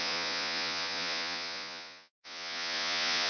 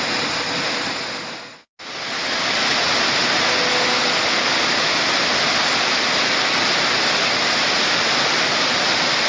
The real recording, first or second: second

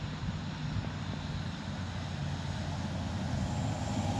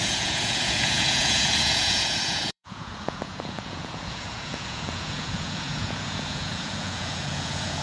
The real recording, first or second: first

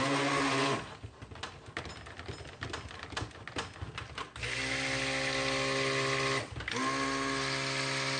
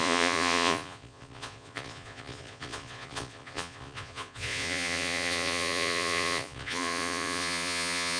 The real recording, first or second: first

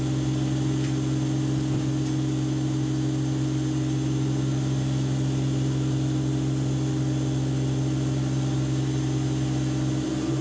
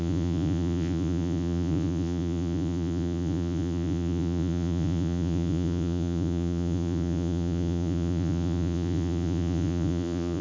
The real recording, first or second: first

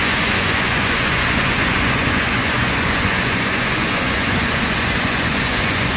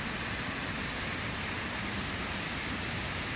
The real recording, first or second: second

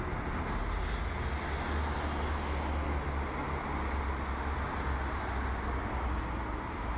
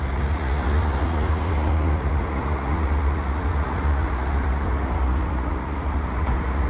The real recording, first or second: first